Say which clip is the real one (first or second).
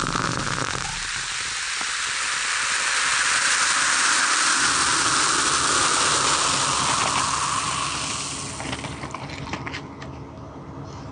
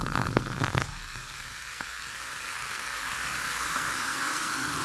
first